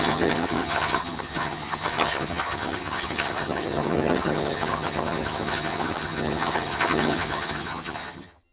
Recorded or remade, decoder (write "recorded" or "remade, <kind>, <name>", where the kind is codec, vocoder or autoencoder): remade, vocoder, HiFi-GAN